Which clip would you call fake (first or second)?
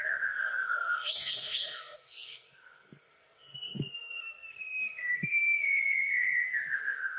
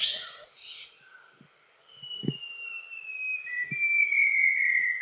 first